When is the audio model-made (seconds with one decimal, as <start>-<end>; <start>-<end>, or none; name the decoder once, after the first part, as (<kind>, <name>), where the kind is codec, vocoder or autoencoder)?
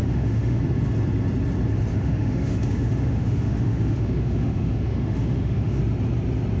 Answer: 0.0-0.6 (autoencoder, DAC-VAE); 1.9-5.8